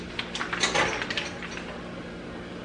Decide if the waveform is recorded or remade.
recorded